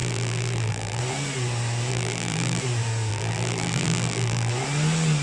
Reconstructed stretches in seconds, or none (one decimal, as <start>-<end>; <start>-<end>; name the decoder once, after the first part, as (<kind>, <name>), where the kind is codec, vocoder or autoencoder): 0.0-1.0 (vocoder, BigVGAN v2); 1.9-2.6; 3.1-4.5